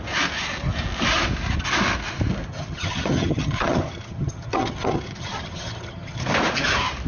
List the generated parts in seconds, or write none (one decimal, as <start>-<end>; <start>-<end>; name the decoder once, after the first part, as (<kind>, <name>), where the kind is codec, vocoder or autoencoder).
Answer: 2.5-6.2 (vocoder, HiFi-GAN)